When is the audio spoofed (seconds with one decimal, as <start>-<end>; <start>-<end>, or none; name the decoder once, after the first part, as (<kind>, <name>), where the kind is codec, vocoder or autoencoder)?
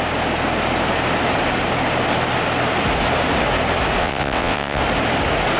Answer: 4.0-4.8 (vocoder, WaveNeXt)